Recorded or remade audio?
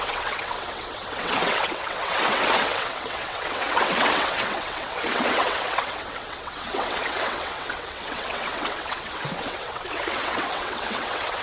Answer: remade